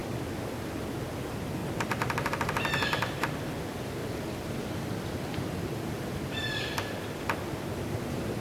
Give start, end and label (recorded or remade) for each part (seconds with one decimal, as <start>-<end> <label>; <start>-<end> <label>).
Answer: 0.0-0.8 remade; 0.8-4.0 recorded; 4.0-7.2 remade; 7.2-8.4 recorded